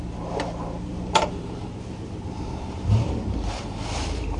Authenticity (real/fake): fake